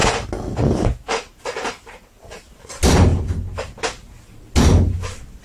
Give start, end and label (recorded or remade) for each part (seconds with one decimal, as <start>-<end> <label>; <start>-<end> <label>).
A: 0.0-5.4 recorded